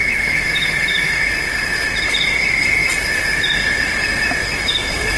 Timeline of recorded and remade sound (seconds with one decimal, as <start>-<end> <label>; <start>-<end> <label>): 0.0-1.2 remade; 1.2-4.4 recorded; 4.4-5.2 remade